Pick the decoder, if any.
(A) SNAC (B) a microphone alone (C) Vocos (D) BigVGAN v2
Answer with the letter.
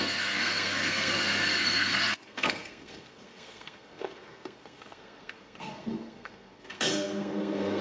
A